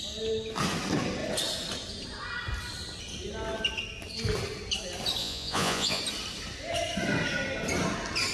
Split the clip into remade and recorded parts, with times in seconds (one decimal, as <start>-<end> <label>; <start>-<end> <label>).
0.0-5.2 recorded; 5.2-6.0 remade; 6.0-8.3 recorded